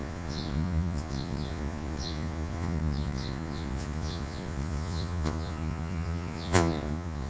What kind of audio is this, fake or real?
fake